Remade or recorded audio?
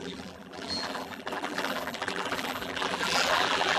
remade